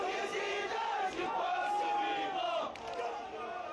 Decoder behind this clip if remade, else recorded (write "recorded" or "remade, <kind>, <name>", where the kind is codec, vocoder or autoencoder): recorded